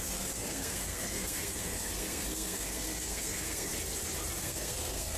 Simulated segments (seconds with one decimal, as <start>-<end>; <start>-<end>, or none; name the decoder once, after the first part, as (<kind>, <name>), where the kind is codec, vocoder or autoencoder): 0.0-3.7 (codec, SNAC); 4.4-5.2